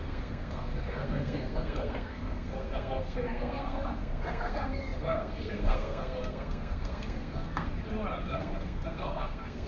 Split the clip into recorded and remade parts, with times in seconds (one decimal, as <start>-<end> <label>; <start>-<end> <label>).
0.0-7.7 remade; 7.7-8.2 recorded; 8.2-9.7 remade